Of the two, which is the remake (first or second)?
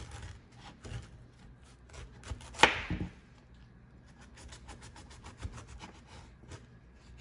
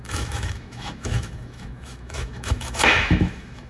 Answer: second